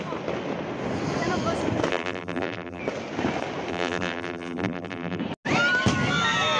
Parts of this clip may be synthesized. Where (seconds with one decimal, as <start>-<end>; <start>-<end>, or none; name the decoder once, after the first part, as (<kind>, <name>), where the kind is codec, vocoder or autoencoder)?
1.9-2.8 (vocoder, BigVGAN v2); 3.7-5.2